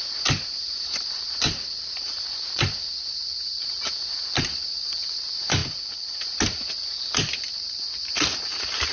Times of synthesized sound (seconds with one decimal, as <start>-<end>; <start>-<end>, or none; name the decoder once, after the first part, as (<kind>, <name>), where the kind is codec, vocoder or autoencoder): 0.0-3.3 (vocoder, BigVGAN v2); 4.4-5.6; 6.2-8.9